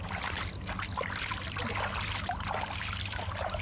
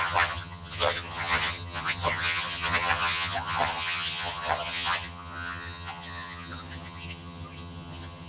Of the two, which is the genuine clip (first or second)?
first